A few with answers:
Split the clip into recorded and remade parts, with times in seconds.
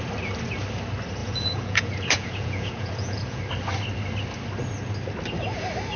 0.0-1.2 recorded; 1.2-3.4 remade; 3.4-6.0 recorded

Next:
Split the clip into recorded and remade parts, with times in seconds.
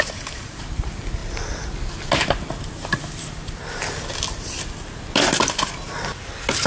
0.0-6.7 recorded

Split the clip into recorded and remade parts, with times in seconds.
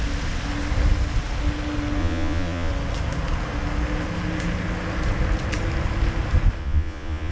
0.0-2.0 recorded; 2.0-2.7 remade; 2.7-6.6 recorded; 6.6-7.3 remade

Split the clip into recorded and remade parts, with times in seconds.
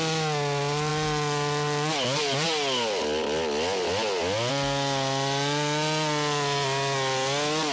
0.0-7.7 recorded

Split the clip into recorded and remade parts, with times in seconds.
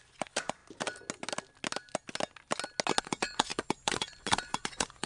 0.0-0.6 remade; 0.6-3.0 recorded; 3.0-5.1 remade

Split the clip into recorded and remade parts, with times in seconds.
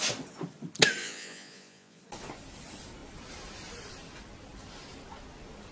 0.0-1.0 recorded; 1.0-2.0 remade; 2.0-5.7 recorded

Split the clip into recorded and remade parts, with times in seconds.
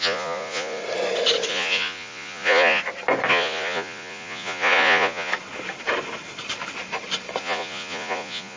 0.0-0.8 remade; 0.8-1.5 recorded; 1.5-2.8 remade; 2.8-3.3 recorded; 3.3-5.3 remade; 5.3-7.4 recorded; 7.4-8.6 remade